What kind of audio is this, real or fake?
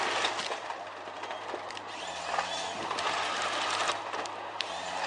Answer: real